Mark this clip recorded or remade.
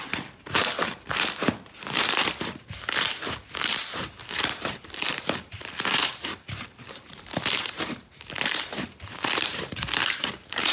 remade